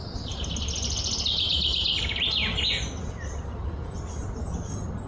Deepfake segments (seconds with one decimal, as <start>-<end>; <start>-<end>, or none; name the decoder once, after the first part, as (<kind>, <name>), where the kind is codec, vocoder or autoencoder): none